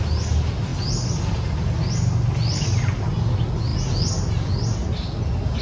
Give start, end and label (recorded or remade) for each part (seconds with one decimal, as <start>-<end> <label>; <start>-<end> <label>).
0.0-5.6 recorded